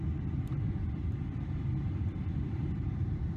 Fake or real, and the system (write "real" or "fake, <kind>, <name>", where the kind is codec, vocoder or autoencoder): fake, vocoder, BigVGAN v2